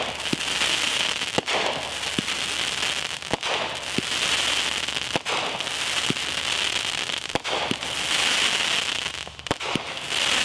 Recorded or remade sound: recorded